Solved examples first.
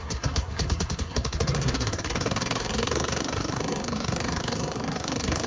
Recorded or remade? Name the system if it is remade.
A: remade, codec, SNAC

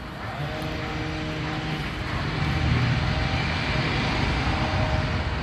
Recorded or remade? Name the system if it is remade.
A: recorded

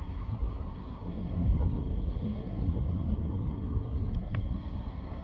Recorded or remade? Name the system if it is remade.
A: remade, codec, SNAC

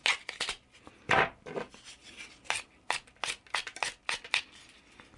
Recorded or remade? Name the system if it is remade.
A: recorded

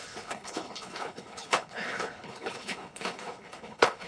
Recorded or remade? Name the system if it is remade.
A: remade, codec, HILCodec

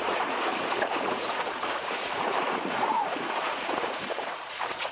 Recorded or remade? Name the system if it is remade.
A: remade, vocoder, Vocos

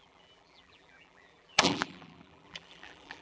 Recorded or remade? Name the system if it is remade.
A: remade, vocoder, BigVGAN v2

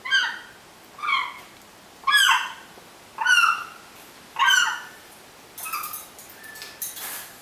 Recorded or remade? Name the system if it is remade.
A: recorded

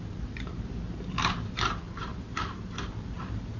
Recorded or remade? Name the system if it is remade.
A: recorded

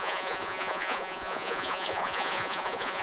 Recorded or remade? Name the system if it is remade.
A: remade, vocoder, Vocos